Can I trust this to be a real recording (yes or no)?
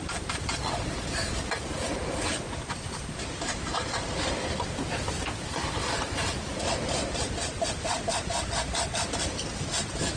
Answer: yes